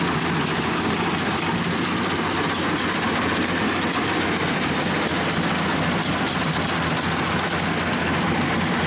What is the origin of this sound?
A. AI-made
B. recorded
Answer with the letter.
B